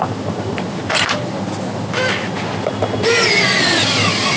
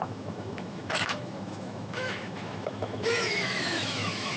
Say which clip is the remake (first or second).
second